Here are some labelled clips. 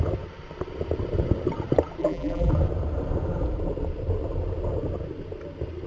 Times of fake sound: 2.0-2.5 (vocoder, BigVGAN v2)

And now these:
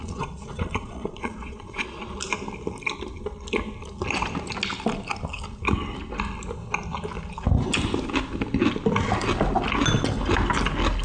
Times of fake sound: 0.0-2.0 (vocoder, Vocos)

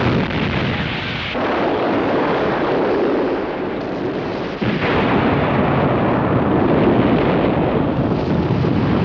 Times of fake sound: 1.7-2.5 (codec, DAC)

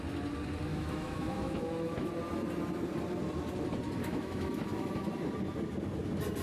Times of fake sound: 0.7-2.1 (autoencoder, DAC-VAE); 4.0-4.9

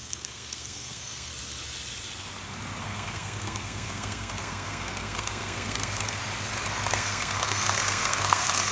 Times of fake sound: 0.0-1.3 (codec, SNAC); 2.8-6.2; 6.9-8.7

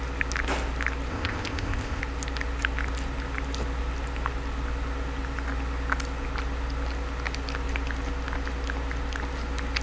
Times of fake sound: 1.1-2.0 (codec, ZipCodec)